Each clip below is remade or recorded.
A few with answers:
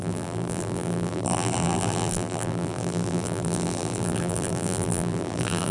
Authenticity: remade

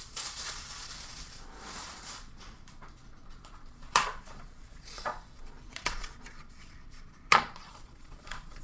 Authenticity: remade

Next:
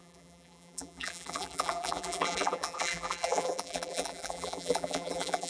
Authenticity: remade